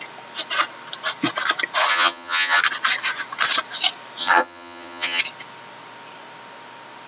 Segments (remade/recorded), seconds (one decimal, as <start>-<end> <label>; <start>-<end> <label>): 0.0-1.9 recorded; 1.9-2.6 remade; 2.6-4.2 recorded; 4.2-5.2 remade; 5.2-7.1 recorded